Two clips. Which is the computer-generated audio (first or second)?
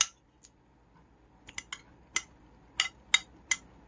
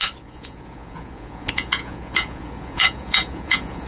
second